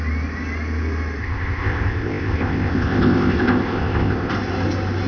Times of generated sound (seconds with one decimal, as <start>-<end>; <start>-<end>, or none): 1.2-4.3